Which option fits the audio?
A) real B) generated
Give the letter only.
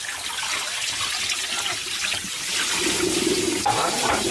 A